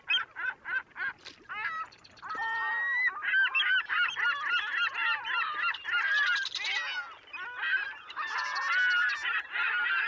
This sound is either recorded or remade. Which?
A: recorded